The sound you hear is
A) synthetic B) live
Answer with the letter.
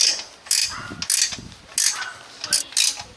B